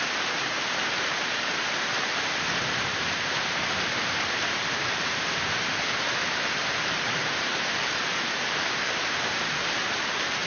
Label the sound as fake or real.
fake